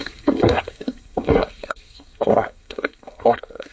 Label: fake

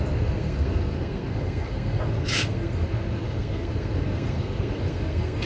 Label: fake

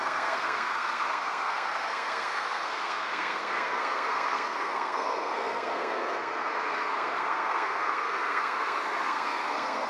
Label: fake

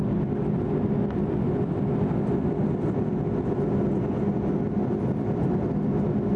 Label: real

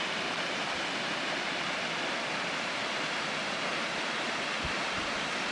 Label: real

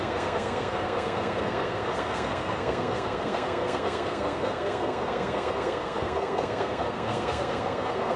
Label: fake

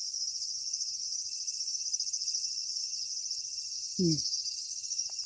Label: real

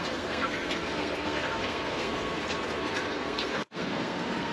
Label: fake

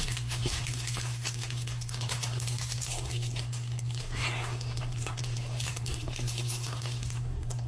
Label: fake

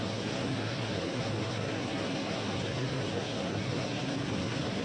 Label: fake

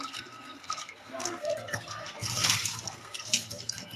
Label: fake